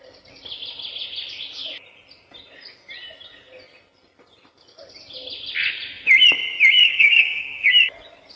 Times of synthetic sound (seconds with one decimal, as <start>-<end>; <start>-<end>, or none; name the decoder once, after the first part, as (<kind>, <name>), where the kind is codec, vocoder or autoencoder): 6.8-7.7 (codec, SNAC)